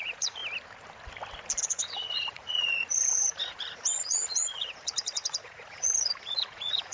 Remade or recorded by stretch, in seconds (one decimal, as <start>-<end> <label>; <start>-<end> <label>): 0.0-0.4 remade; 0.4-1.6 recorded; 1.6-6.9 remade